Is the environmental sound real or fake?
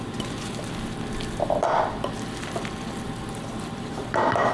fake